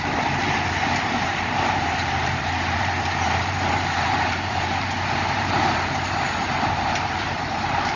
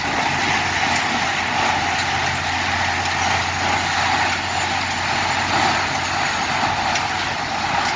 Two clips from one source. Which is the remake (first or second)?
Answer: first